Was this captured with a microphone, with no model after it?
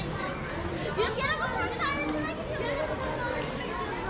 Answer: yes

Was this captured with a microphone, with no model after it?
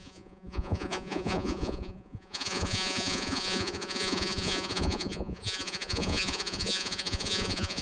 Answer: no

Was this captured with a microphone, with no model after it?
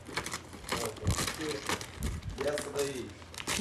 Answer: yes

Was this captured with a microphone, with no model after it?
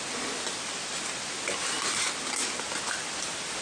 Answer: yes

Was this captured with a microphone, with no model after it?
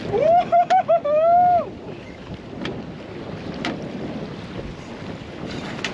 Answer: yes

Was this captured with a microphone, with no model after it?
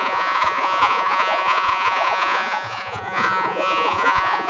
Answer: no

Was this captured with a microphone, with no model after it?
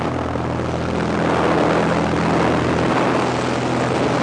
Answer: yes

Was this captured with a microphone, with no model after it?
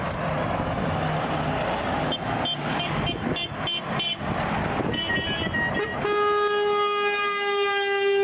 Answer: yes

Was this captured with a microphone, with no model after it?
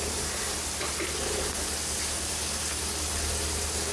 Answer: yes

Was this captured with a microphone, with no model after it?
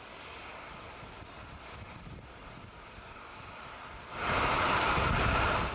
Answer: yes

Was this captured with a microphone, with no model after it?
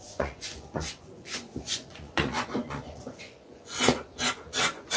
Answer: no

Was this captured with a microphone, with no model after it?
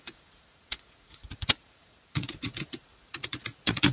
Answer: no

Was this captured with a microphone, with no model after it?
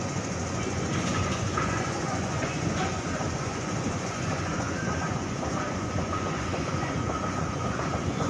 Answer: no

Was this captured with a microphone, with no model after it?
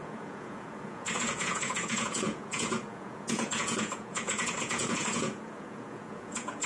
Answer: no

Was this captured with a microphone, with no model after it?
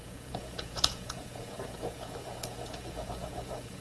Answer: no